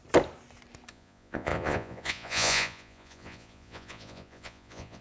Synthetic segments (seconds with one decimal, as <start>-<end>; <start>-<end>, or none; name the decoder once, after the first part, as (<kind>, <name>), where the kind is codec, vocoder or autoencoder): 0.9-5.0 (vocoder, Vocos)